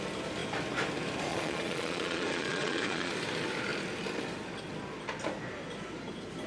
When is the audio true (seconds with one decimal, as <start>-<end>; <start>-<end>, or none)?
0.0-1.3; 3.1-6.5